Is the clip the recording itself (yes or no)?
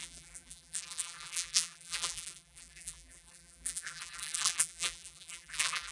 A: no